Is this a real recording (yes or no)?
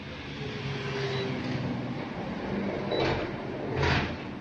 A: yes